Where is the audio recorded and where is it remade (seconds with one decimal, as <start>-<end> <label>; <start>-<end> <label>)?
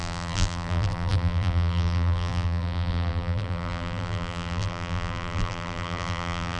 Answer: 0.0-6.6 remade